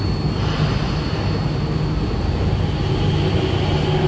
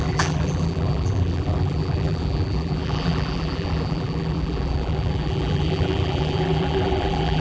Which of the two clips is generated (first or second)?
second